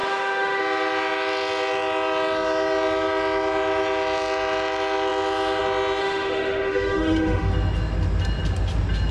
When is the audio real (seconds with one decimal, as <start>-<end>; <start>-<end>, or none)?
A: 0.6-6.0; 7.5-9.1